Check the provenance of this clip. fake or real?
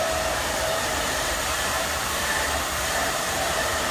fake